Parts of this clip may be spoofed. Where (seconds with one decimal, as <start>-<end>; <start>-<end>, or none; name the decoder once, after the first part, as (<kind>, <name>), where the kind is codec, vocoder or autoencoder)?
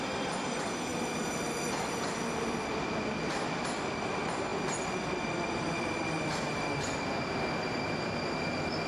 none